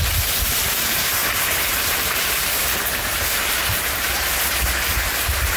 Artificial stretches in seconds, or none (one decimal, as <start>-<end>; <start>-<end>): 0.0-5.6